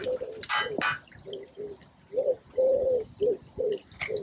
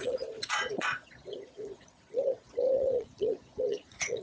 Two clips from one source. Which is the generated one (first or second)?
second